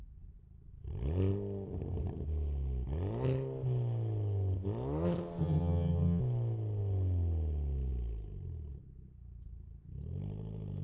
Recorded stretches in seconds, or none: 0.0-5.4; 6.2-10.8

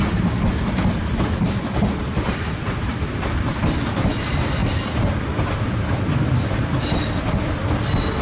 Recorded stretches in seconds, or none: 0.0-8.2

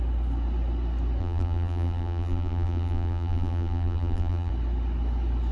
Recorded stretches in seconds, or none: 0.0-1.2; 4.5-5.5

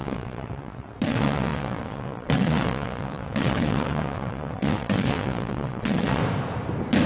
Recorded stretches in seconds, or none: 6.2-7.1

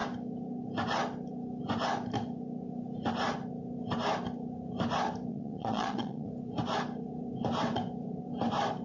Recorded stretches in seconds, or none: 0.0-5.3; 6.3-8.8

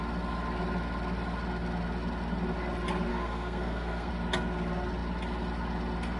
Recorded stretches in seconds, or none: 0.0-3.1; 4.1-6.2

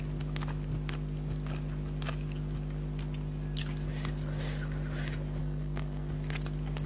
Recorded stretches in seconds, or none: 0.0-5.4; 6.1-6.9